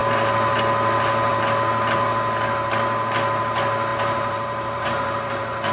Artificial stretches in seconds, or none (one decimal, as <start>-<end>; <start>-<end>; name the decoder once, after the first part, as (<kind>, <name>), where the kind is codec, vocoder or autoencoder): 3.9-5.7 (vocoder, BigVGAN v2)